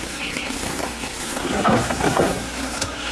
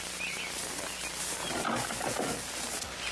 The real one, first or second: second